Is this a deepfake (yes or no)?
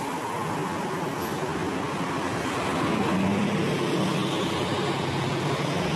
no